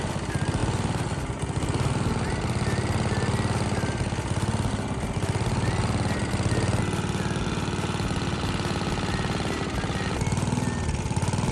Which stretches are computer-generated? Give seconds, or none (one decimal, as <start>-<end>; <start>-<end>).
none